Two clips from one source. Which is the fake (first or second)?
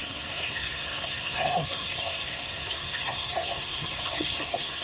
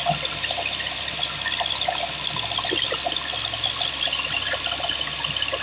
first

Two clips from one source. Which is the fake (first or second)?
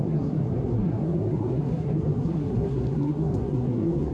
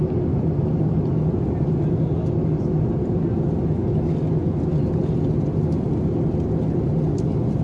first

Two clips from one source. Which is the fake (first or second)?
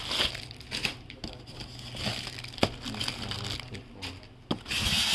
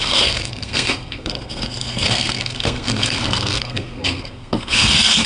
second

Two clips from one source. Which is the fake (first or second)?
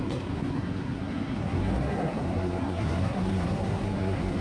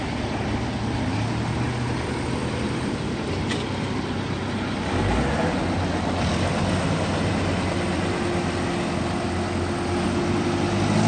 first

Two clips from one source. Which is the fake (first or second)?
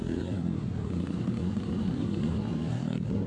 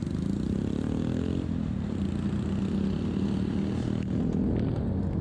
first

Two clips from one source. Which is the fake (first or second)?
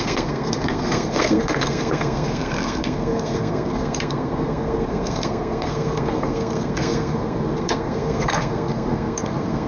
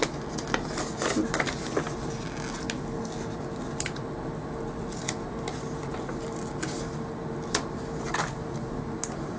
first